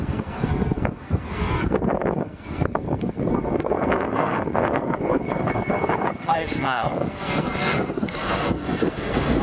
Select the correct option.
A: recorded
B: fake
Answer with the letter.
B